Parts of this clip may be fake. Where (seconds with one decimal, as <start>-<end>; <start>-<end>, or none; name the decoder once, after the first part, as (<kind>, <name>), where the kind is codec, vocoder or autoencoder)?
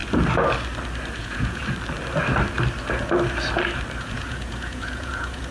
1.2-1.6 (vocoder, Vocos); 4.0-5.5